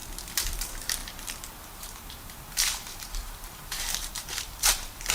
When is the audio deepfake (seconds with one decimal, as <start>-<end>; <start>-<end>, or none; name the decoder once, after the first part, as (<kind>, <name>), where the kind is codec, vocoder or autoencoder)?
0.6-5.1 (vocoder, BigVGAN v2)